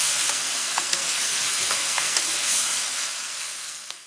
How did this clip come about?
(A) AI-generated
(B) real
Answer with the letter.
A